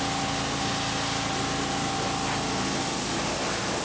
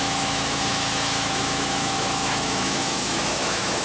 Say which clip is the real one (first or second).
first